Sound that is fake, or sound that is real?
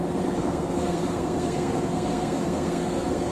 fake